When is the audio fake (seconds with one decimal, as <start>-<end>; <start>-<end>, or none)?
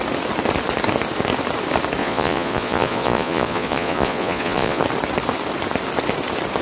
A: 2.0-4.8